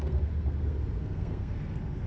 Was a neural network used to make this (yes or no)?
yes